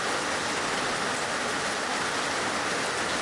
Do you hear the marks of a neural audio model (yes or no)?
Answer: no